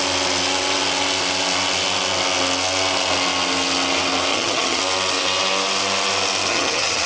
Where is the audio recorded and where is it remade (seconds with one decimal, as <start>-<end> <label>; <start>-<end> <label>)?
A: 0.0-4.3 recorded; 4.3-4.8 remade; 4.8-6.5 recorded; 6.5-7.1 remade